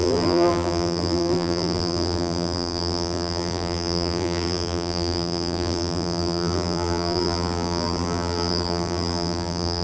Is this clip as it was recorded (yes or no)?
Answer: no